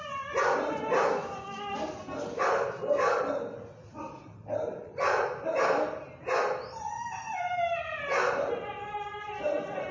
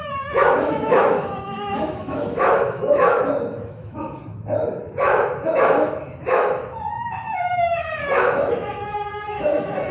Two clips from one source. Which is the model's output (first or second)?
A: second